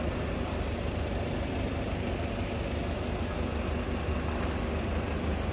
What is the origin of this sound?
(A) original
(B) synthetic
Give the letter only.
A